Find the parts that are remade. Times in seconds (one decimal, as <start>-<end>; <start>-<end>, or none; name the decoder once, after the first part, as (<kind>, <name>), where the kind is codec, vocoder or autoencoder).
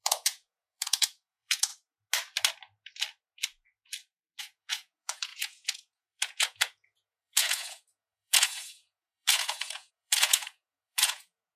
0.0-1.7 (vocoder, Vocos); 4.4-11.6